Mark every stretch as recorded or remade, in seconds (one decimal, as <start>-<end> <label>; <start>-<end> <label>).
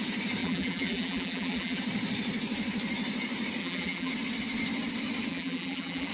0.0-0.4 recorded; 0.4-1.8 remade; 1.8-3.6 recorded; 3.6-4.1 remade; 4.1-5.3 recorded; 5.3-6.1 remade